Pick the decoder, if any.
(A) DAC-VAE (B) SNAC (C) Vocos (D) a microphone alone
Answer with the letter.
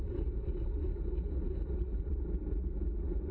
D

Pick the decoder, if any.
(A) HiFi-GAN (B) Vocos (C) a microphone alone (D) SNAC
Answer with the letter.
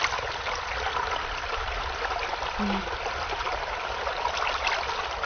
C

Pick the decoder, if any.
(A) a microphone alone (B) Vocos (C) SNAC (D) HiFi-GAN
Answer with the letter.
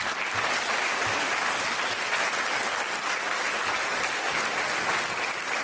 A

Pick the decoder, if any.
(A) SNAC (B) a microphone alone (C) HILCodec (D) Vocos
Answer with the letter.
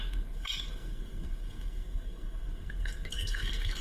A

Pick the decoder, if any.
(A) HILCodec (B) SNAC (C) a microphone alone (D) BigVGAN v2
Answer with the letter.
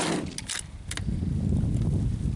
C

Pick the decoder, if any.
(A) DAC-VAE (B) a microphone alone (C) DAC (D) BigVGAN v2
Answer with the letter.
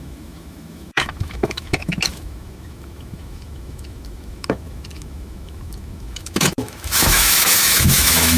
A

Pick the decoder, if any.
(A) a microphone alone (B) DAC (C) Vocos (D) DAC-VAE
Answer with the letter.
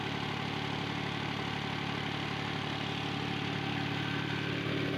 A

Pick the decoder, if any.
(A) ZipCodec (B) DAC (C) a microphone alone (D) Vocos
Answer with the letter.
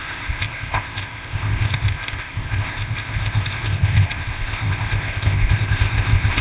A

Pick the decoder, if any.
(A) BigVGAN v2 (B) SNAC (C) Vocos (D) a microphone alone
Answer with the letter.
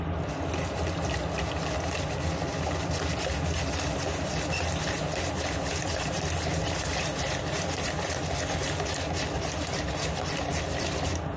D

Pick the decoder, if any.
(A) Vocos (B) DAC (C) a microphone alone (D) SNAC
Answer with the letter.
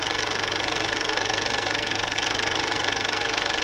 D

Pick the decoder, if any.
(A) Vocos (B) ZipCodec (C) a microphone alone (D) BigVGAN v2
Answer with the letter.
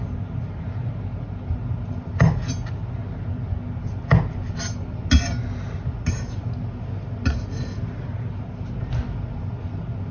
C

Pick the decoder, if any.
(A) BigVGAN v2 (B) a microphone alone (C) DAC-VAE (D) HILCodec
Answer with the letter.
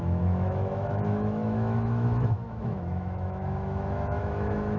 C